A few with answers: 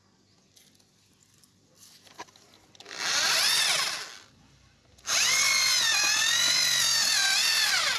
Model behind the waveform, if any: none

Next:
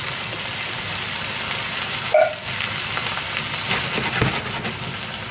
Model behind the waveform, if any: none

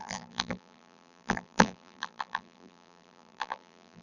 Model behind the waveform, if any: vocoder, BigVGAN v2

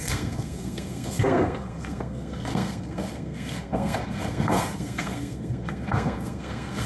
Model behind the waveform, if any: codec, SNAC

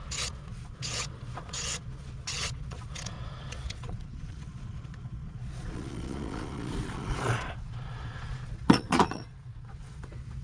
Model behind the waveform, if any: vocoder, Vocos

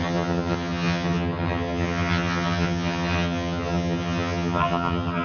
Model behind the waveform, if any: vocoder, HiFi-GAN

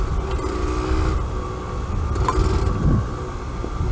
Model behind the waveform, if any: none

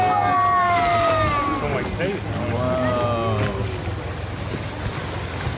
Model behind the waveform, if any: none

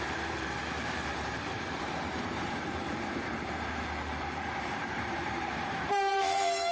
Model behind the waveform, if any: vocoder, BigVGAN v2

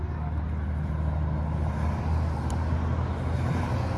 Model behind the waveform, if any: none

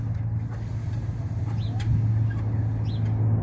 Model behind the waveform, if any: none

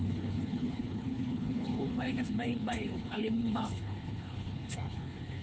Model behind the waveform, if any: codec, HILCodec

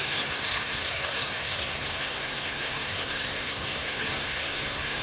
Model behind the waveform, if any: codec, SNAC